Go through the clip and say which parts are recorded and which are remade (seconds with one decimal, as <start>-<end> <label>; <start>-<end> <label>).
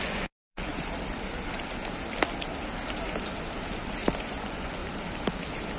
0.0-0.7 remade; 0.7-4.2 recorded; 4.2-4.8 remade; 4.8-5.8 recorded